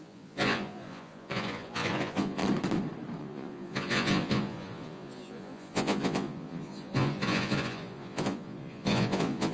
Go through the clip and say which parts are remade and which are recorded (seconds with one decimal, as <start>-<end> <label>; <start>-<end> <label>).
0.0-2.4 remade; 2.4-3.2 recorded; 3.2-9.5 remade